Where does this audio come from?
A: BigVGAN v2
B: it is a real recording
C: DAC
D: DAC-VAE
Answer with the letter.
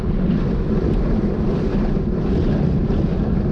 A